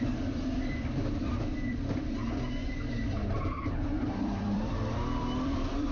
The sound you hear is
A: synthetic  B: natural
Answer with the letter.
A